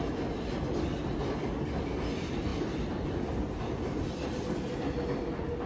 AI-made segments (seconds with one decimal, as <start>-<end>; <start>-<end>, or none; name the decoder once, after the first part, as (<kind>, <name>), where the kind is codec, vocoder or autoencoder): none

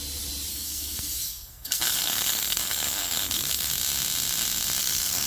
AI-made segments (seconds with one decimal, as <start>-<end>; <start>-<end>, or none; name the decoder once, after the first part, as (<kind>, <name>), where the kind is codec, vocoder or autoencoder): 0.5-3.7 (codec, SNAC); 4.8-5.3

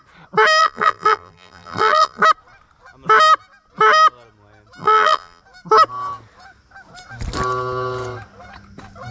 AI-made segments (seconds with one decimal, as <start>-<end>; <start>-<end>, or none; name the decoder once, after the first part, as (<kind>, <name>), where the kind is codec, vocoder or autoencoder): 0.6-2.2 (vocoder, BigVGAN v2); 4.8-5.4

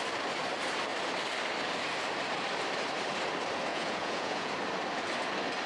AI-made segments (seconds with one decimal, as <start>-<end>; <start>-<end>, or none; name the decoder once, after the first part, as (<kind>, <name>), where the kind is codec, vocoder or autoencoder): 3.7-4.5 (vocoder, Vocos)

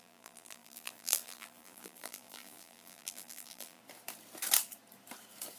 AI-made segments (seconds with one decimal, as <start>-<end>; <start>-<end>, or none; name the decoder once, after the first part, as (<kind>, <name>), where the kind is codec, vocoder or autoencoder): 0.0-3.8 (vocoder, BigVGAN v2)